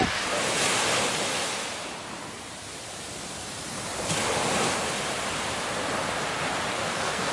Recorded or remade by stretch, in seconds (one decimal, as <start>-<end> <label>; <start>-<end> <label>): 0.0-6.8 recorded; 6.8-7.3 remade

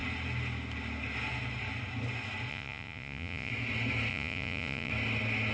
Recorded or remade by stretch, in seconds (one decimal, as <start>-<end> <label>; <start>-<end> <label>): 0.0-2.5 recorded; 2.5-3.5 remade; 3.5-4.1 recorded; 4.1-4.9 remade; 4.9-5.5 recorded

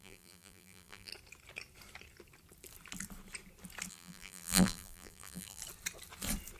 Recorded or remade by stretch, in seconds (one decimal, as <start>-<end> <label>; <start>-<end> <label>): 0.0-1.1 remade; 1.1-3.9 recorded; 3.9-5.6 remade; 5.6-6.6 recorded

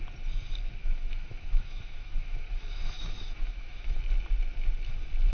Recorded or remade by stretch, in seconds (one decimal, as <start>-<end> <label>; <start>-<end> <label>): 0.0-0.8 recorded; 0.8-4.0 remade; 4.0-5.3 recorded

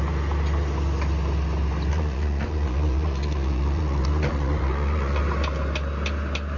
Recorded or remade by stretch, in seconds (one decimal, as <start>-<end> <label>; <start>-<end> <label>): 0.0-1.9 recorded; 1.9-5.2 remade; 5.2-6.6 recorded